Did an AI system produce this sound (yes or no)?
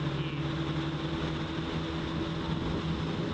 no